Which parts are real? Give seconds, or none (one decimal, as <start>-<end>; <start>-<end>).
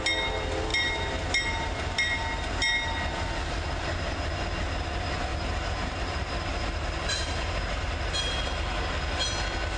0.0-5.3; 7.9-9.8